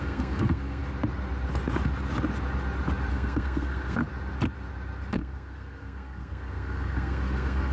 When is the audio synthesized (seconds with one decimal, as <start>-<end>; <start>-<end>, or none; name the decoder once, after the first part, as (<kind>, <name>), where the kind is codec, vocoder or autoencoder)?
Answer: 0.0-0.8 (codec, SNAC); 3.1-4.0; 5.1-7.7